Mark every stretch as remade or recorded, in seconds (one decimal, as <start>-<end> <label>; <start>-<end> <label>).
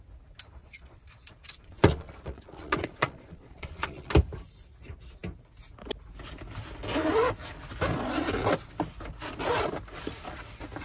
0.0-0.6 recorded; 0.6-4.1 remade; 4.1-10.8 recorded